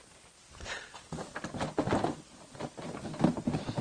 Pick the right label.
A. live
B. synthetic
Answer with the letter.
A